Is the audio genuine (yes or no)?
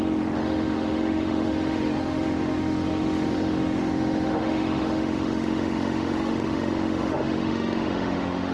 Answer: no